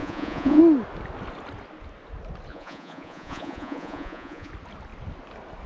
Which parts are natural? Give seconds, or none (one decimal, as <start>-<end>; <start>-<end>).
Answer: 0.6-2.5; 4.5-5.7